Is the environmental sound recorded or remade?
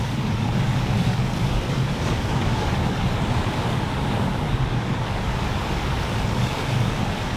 remade